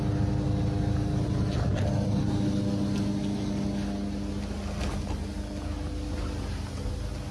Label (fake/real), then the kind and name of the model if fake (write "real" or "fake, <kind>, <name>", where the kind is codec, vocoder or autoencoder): real